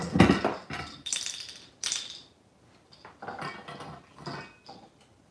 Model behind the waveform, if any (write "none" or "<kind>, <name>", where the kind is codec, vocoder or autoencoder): none